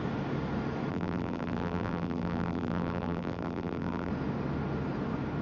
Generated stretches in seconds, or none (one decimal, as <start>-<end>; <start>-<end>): 0.9-4.1